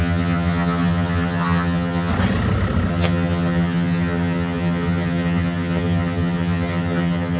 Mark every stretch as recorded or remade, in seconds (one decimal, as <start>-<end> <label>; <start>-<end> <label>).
0.0-2.1 remade; 2.1-2.9 recorded; 2.9-7.4 remade